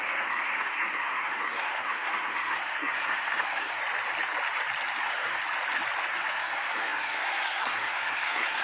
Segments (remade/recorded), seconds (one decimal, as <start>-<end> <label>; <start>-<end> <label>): 0.0-3.8 remade; 3.8-5.0 recorded; 5.0-5.4 remade; 5.4-6.3 recorded; 6.3-8.6 remade